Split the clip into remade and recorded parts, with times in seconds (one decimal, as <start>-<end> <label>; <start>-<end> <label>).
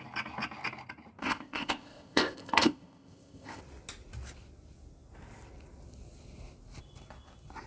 0.0-1.2 recorded; 1.2-3.6 remade; 3.6-7.7 recorded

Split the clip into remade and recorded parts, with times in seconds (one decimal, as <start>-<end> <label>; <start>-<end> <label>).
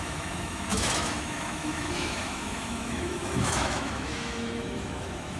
0.0-5.4 remade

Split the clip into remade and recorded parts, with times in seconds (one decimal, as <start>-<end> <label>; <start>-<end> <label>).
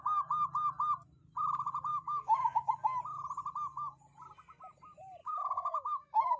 0.0-1.9 recorded; 1.9-3.0 remade; 3.0-5.2 recorded; 5.2-6.4 remade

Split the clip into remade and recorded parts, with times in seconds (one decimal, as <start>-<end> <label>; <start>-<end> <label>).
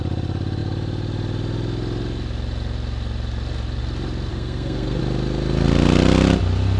0.0-4.3 recorded; 4.3-5.0 remade; 5.0-6.8 recorded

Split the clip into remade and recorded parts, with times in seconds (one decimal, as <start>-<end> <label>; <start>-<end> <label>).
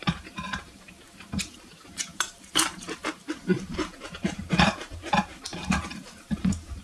0.0-6.8 remade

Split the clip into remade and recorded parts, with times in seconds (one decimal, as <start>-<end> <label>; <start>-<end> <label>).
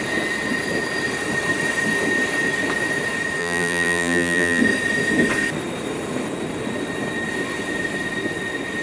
0.0-3.4 recorded; 3.4-4.6 remade; 4.6-8.8 recorded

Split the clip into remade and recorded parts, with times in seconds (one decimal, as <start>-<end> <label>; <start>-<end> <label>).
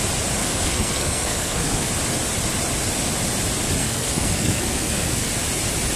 0.0-0.4 recorded; 0.4-1.9 remade; 1.9-3.8 recorded; 3.8-5.3 remade; 5.3-6.0 recorded